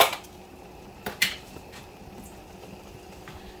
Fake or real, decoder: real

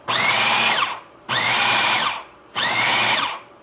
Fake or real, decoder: fake, vocoder, BigVGAN v2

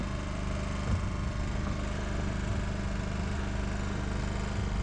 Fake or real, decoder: real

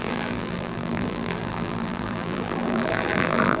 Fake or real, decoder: fake, vocoder, BigVGAN v2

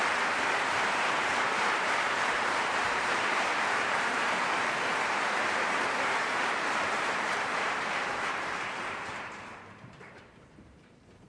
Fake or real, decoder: fake, vocoder, BigVGAN v2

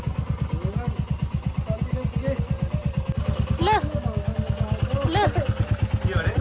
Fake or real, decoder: real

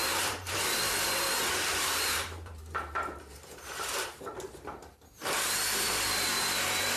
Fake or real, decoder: fake, vocoder, BigVGAN v2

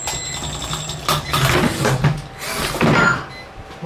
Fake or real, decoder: real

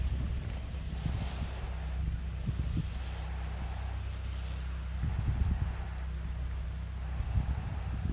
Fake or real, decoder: real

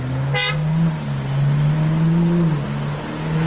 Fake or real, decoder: real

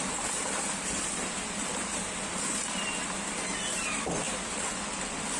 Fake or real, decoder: real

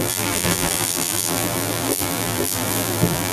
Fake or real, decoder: fake, vocoder, BigVGAN v2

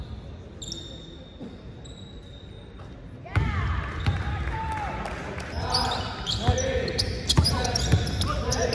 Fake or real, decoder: real